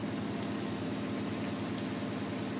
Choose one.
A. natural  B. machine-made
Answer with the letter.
A